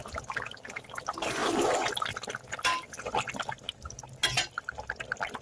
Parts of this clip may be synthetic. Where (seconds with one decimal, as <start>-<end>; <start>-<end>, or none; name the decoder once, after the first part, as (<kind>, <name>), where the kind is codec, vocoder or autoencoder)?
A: none